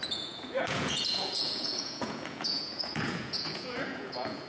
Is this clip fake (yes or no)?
yes